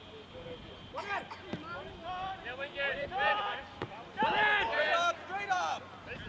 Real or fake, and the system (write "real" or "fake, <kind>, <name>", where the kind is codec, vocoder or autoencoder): fake, vocoder, BigVGAN v2